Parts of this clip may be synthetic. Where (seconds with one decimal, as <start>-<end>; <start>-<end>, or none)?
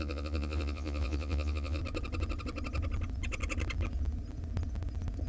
0.0-1.8